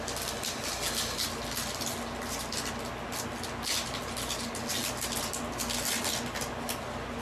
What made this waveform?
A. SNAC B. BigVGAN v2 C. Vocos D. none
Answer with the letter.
D